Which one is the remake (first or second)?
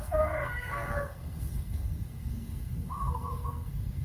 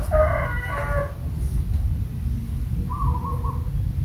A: first